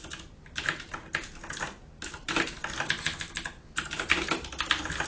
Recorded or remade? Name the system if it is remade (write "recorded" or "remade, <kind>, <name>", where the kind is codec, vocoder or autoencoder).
recorded